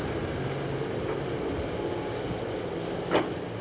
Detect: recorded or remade recorded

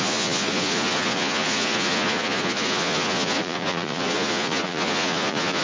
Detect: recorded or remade remade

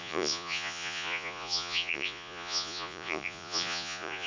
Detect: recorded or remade remade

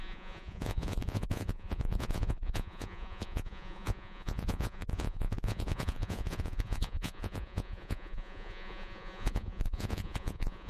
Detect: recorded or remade remade